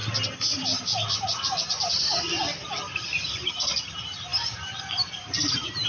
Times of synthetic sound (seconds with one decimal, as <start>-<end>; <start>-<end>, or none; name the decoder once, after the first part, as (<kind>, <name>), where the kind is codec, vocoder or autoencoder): none